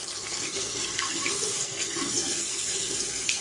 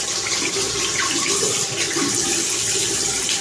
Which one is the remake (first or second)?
first